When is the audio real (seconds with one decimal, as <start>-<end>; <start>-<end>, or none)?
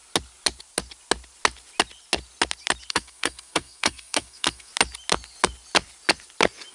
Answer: 0.0-2.9; 4.7-6.7